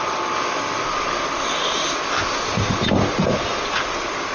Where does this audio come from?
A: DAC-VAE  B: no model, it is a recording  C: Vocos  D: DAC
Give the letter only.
B